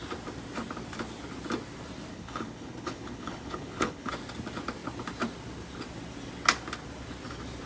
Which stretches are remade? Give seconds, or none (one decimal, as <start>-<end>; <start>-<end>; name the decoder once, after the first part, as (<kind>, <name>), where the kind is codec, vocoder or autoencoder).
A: 2.1-4.1 (codec, HILCodec)